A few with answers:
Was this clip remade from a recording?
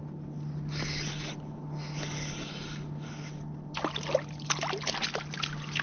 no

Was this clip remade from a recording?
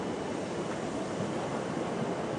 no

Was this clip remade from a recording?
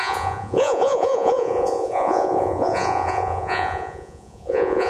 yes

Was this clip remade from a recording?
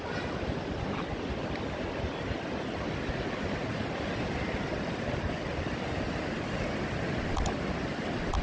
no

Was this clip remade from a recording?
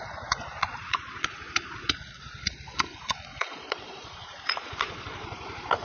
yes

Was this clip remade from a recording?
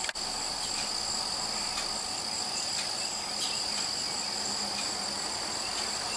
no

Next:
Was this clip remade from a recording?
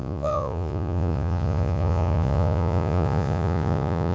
yes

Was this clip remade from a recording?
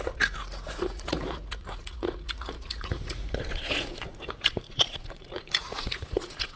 yes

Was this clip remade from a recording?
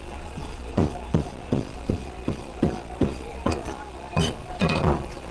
yes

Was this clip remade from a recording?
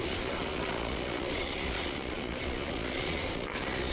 yes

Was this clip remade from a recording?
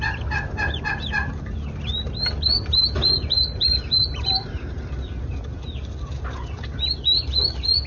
no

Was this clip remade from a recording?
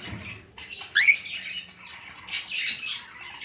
no